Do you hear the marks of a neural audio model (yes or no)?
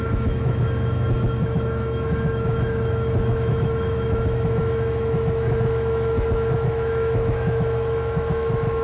yes